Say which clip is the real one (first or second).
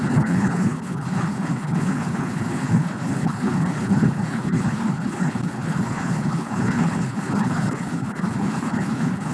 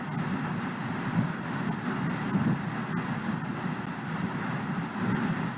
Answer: second